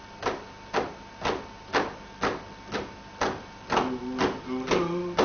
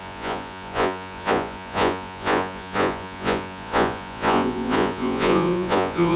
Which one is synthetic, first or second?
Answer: second